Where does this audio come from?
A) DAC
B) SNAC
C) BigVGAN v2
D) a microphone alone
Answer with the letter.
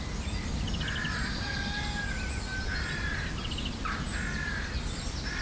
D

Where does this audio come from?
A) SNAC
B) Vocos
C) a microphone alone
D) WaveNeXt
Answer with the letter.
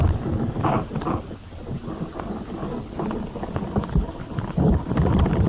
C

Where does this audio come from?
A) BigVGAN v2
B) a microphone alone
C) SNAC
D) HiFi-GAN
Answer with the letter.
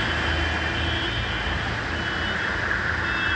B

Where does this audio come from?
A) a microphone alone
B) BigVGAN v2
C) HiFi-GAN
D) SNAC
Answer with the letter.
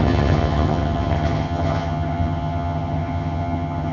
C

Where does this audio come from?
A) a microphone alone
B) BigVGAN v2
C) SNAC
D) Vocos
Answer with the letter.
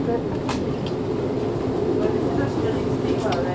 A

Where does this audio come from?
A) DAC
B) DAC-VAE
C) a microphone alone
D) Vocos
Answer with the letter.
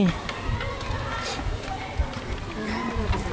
C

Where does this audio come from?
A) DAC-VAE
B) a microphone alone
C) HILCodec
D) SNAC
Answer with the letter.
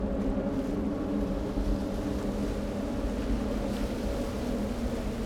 B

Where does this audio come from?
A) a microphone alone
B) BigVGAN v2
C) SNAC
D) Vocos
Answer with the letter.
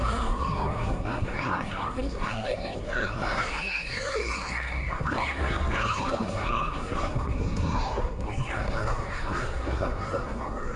C